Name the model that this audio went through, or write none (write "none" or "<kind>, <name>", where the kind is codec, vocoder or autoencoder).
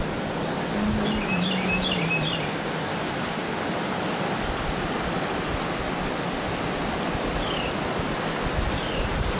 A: none